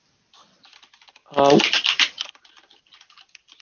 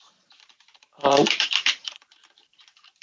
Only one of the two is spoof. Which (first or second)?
second